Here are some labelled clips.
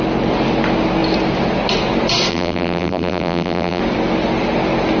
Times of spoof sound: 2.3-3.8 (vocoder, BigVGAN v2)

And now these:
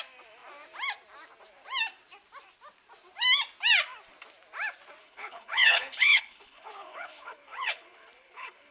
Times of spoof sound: 5.0-8.7 (codec, HILCodec)

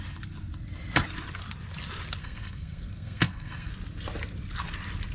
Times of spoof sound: 2.2-3.7 (codec, SNAC)

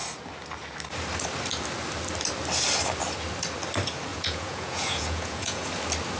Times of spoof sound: 4.1-5.7 (vocoder, Vocos)

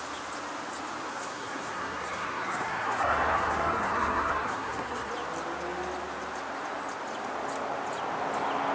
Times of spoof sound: 1.1-5.1 (codec, SNAC)

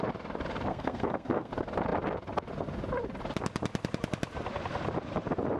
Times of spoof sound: 0.7-1.5 (codec, SNAC)

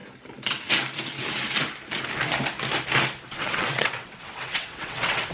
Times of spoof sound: 3.2-5.3 (vocoder, WaveNeXt)

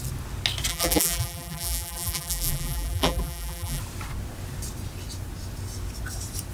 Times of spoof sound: 0.7-3.8 (vocoder, BigVGAN v2)